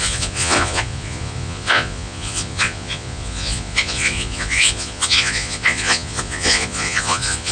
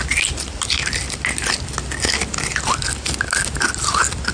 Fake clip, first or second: first